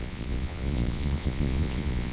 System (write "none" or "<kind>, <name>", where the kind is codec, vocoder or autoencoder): vocoder, Vocos